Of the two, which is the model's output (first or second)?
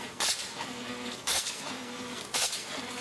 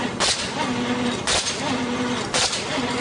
first